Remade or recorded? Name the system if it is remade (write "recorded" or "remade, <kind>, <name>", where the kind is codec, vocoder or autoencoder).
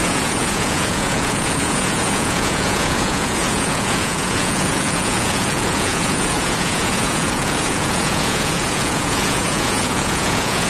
remade, vocoder, Vocos